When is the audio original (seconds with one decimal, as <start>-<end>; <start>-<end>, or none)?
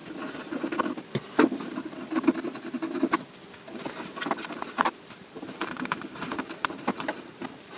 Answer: 0.0-4.7